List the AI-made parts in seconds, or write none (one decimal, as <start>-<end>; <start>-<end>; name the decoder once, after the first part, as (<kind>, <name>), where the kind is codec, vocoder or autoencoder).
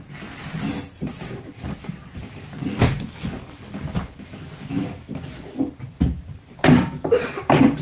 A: none